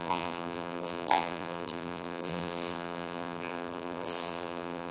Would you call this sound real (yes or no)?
no